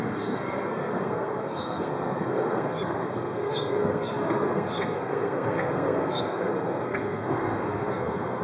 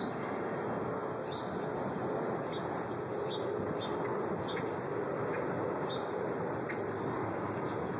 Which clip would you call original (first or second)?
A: second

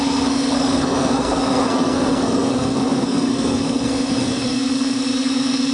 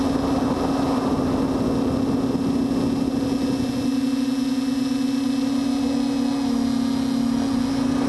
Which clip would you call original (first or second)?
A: second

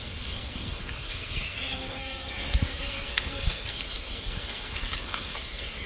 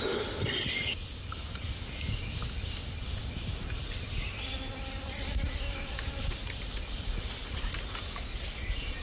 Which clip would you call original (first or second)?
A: second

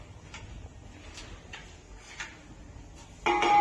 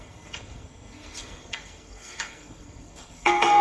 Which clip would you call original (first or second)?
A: first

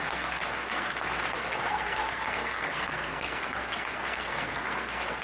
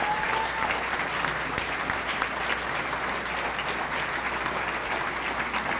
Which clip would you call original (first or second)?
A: second